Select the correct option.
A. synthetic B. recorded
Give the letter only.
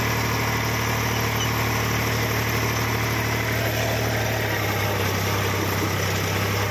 B